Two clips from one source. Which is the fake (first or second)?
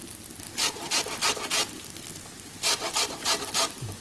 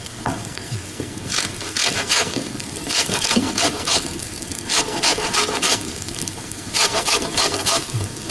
second